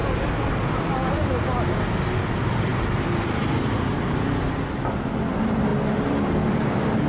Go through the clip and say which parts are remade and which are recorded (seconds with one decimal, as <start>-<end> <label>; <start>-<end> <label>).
0.0-7.1 recorded